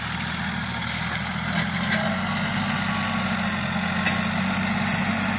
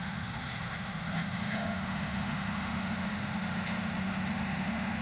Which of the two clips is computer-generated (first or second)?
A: second